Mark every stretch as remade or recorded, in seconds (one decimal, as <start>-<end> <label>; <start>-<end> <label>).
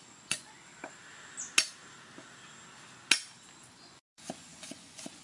0.0-0.7 remade; 0.7-3.7 recorded; 3.7-5.2 remade